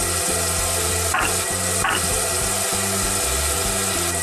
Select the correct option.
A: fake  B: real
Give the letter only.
B